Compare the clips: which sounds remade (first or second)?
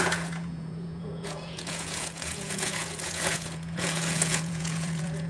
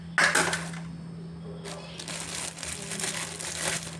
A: first